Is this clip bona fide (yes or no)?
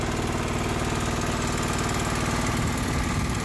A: yes